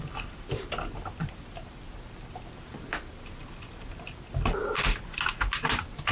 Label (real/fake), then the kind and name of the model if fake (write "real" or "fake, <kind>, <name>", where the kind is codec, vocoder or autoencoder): real